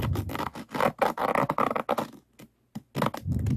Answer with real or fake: real